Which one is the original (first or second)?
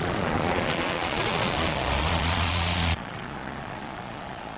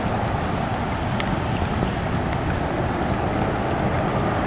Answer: second